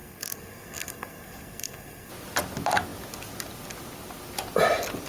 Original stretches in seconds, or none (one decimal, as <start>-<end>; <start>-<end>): 2.1-5.1